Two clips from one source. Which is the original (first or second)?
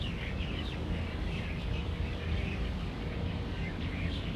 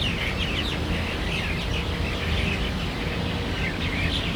second